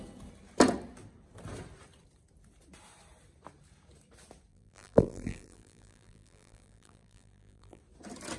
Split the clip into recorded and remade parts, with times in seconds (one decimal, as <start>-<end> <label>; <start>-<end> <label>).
0.0-4.5 recorded; 4.5-7.8 remade; 7.8-8.4 recorded